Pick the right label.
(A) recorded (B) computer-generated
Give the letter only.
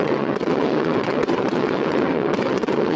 B